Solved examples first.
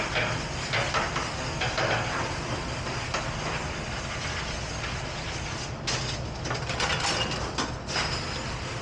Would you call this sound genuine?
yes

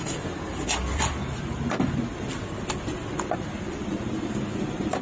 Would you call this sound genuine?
yes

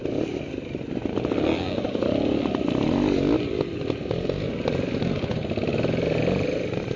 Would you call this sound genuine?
yes